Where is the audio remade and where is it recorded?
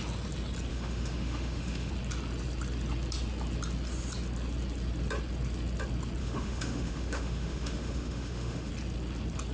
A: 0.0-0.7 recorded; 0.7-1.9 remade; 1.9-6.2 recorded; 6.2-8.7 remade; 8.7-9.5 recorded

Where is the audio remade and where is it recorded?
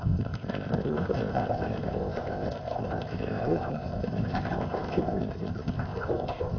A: 0.0-6.6 remade